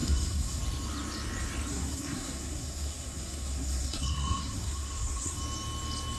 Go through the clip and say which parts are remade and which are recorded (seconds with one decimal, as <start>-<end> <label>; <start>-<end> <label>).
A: 0.0-0.6 remade; 0.6-1.7 recorded; 1.7-5.4 remade; 5.4-6.2 recorded